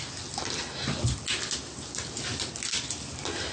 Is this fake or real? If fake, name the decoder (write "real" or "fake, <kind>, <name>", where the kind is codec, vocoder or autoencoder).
real